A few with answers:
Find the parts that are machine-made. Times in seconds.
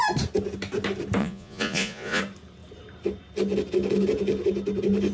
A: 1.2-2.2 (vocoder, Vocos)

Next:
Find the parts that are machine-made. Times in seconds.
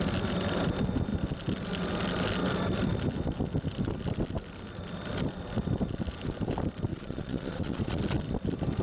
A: 6.9-8.0 (vocoder, Vocos)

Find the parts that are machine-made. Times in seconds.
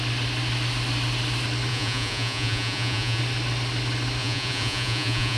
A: 1.7-3.2 (vocoder, Vocos); 4.2-5.4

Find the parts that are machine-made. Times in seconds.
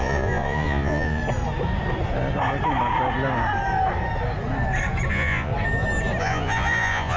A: 0.0-1.2 (vocoder, Vocos); 5.1-5.5; 6.2-7.2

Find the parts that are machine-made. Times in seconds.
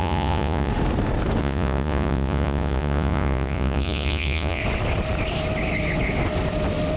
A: 0.0-0.7 (vocoder, Vocos); 1.4-4.6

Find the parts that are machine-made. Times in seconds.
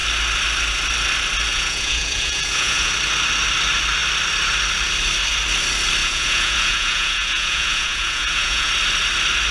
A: 1.5-2.9 (vocoder, Vocos); 6.0-8.7